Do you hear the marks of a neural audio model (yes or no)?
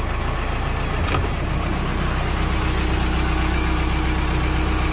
no